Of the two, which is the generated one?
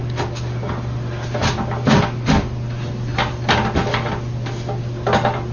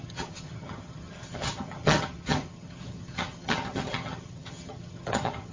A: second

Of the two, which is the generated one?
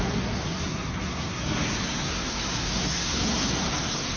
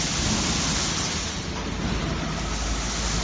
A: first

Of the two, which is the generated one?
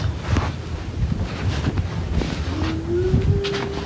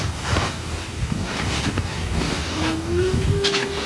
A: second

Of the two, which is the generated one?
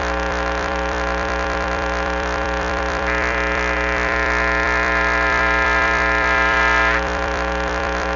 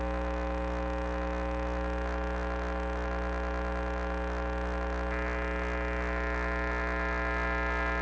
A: first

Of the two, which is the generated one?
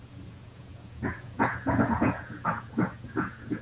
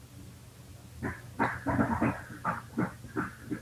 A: first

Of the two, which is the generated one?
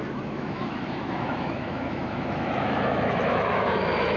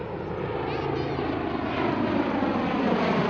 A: first